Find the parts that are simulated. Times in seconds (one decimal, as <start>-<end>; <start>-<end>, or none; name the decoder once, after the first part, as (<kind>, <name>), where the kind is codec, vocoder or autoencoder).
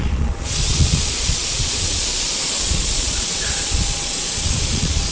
0.0-5.1 (vocoder, Vocos)